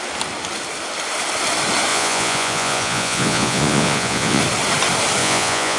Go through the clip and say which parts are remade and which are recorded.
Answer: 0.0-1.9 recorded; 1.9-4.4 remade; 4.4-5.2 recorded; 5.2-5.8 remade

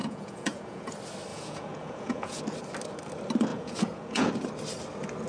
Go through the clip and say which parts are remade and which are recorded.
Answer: 0.0-0.9 remade; 0.9-1.3 recorded; 1.3-2.4 remade; 2.4-3.5 recorded; 3.5-4.3 remade; 4.3-5.3 recorded